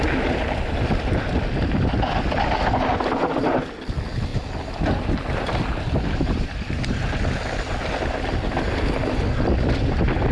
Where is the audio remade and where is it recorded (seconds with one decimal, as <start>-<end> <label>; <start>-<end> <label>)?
0.0-4.3 recorded; 4.3-7.2 remade; 7.2-10.3 recorded